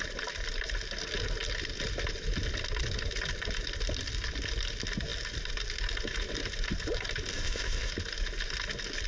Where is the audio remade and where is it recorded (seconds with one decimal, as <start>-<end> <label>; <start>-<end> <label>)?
0.0-7.3 recorded; 7.3-7.9 remade; 7.9-9.1 recorded